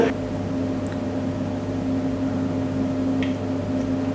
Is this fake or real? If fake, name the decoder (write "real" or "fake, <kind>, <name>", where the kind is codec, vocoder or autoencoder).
real